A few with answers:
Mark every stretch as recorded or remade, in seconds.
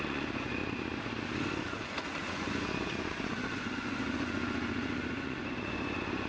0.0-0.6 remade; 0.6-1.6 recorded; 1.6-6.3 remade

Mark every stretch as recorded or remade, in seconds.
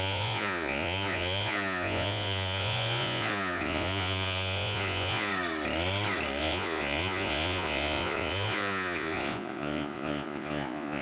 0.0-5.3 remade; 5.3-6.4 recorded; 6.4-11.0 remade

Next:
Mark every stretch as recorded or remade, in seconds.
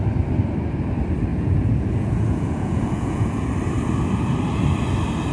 0.0-1.3 recorded; 1.3-3.5 remade; 3.5-5.3 recorded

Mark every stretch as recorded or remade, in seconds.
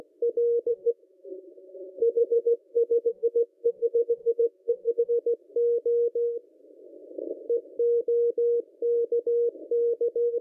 0.0-0.7 recorded; 0.7-5.1 remade; 5.1-10.4 recorded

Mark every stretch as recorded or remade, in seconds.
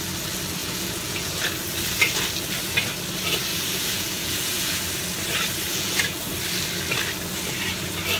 0.0-0.6 recorded; 0.6-1.4 remade; 1.4-3.5 recorded; 3.5-4.8 remade; 4.8-5.7 recorded; 5.7-6.3 remade; 6.3-8.2 recorded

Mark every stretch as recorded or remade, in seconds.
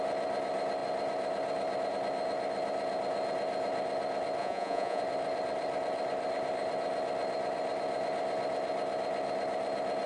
0.0-4.4 recorded; 4.4-5.0 remade; 5.0-10.1 recorded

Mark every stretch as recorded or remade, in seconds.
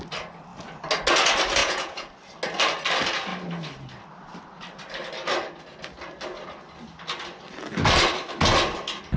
0.0-1.6 recorded; 1.6-2.1 remade; 2.1-9.2 recorded